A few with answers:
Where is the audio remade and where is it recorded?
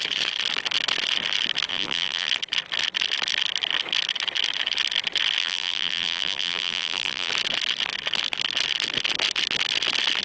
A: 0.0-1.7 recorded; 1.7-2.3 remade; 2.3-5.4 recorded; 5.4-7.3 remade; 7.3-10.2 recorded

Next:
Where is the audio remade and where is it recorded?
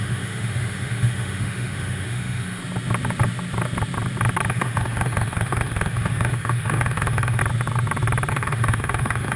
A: 0.0-2.6 remade; 2.6-4.5 recorded; 4.5-7.4 remade; 7.4-8.3 recorded; 8.3-9.4 remade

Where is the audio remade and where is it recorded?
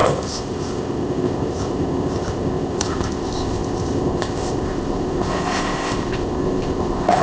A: 0.0-7.2 remade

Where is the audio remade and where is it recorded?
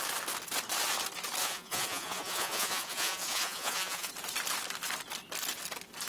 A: 0.0-1.4 recorded; 1.4-4.1 remade; 4.1-6.1 recorded